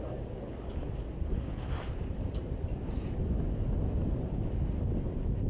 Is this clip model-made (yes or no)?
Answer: no